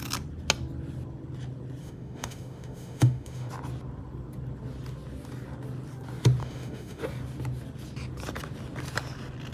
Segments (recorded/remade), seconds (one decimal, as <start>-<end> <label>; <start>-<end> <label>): 0.0-1.8 recorded; 1.8-3.5 remade; 3.5-6.4 recorded; 6.4-7.0 remade; 7.0-9.5 recorded